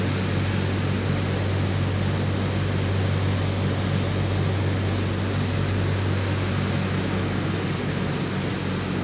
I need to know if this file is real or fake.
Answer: real